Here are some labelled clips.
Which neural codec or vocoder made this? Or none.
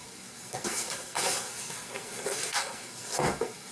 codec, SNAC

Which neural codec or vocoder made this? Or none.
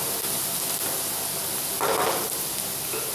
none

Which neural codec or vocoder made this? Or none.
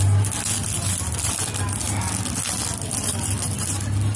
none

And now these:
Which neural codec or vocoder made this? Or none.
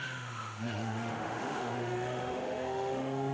autoencoder, DAC-VAE